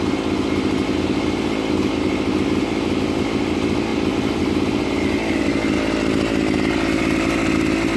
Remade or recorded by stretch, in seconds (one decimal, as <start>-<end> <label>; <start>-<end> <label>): 0.0-8.0 recorded